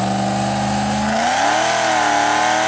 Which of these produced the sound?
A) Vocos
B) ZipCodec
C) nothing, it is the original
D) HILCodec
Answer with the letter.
C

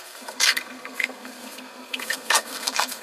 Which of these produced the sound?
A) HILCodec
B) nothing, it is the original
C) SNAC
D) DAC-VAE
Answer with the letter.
C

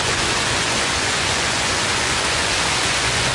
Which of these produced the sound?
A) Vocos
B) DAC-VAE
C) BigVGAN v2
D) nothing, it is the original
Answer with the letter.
A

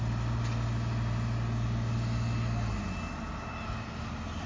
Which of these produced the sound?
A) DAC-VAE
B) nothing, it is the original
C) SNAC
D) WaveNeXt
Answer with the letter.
B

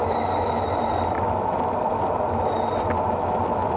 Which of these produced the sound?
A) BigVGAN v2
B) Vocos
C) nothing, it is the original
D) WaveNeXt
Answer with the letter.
C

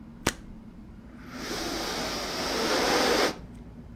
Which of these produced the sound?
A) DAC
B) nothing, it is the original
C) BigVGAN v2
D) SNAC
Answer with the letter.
C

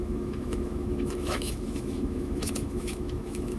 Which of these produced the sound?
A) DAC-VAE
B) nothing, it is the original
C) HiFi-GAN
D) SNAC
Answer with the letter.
A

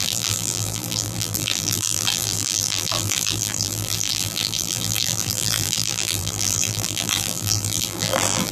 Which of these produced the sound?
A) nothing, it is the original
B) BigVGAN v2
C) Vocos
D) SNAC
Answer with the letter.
B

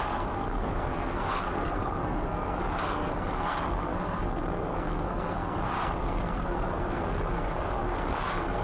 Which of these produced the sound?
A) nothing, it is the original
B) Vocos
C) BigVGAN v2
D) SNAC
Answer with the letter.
D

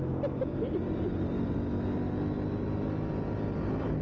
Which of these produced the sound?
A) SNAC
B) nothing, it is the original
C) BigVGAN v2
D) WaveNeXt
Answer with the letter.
B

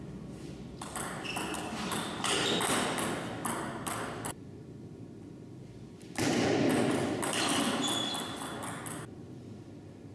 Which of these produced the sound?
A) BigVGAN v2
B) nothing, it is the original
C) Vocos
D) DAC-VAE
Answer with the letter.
B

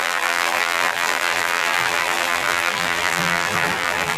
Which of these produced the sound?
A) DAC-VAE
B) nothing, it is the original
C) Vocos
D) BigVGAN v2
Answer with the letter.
D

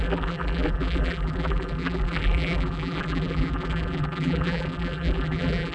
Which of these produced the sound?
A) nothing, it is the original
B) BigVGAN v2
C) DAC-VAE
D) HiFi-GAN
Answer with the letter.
B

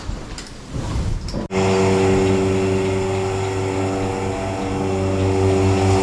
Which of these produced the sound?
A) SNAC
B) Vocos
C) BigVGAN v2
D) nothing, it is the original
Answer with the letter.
D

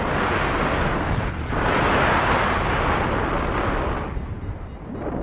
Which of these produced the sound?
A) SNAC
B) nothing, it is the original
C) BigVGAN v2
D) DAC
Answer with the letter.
B